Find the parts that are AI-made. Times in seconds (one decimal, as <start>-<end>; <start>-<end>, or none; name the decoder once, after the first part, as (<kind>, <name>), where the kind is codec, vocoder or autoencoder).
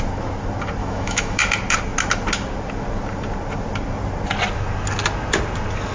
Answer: 0.8-1.4 (autoencoder, DAC-VAE)